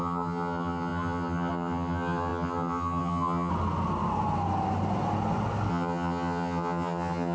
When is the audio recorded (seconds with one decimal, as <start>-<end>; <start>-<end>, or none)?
3.5-5.7